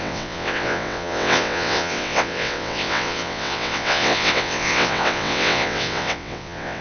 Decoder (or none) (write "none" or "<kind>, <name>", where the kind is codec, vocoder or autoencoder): vocoder, WaveNeXt